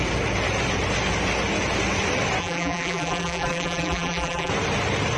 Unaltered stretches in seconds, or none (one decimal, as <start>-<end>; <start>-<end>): 0.0-2.4; 4.5-5.2